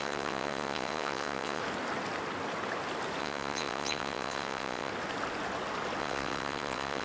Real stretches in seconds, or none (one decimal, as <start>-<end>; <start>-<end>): 1.6-3.2; 4.9-6.0